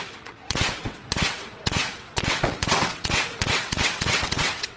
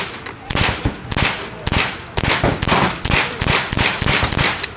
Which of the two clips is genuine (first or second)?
second